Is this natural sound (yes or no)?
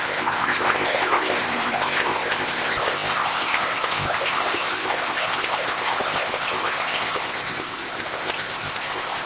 no